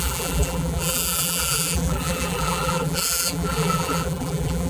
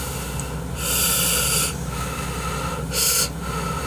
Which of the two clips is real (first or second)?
second